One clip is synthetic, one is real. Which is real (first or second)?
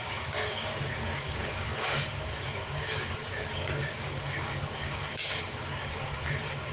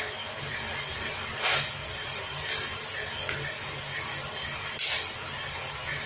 second